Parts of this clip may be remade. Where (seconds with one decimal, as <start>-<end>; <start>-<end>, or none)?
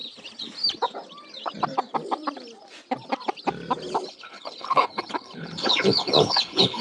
4.1-6.8